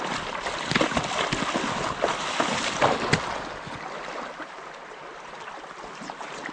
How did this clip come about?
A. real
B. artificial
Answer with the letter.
A